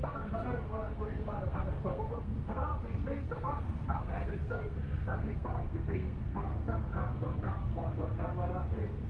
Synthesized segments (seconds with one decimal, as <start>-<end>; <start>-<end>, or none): 0.0-9.1